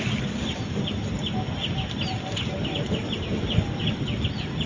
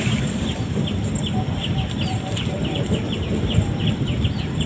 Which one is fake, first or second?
second